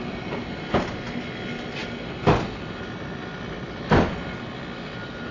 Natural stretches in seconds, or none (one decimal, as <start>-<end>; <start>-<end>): 0.0-5.3